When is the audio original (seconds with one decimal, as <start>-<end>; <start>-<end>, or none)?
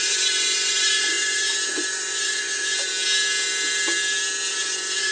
2.9-4.5